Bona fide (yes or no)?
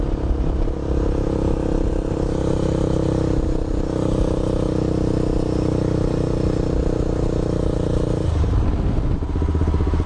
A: yes